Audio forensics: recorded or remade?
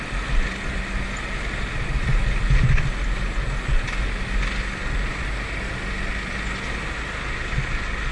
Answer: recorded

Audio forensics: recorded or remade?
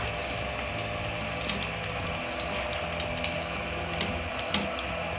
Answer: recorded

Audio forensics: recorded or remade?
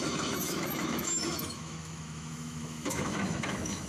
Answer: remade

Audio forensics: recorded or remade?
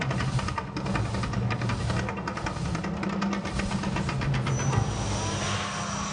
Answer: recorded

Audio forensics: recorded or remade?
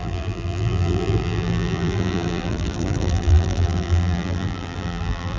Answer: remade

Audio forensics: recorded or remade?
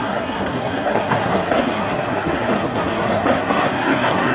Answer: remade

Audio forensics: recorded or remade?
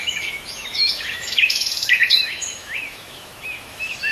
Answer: remade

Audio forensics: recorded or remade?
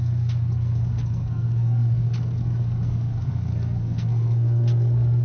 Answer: remade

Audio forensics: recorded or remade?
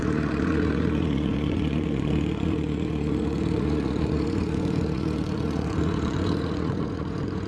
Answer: remade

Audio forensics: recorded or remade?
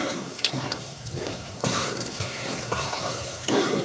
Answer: remade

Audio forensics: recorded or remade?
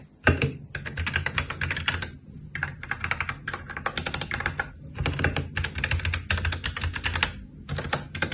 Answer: recorded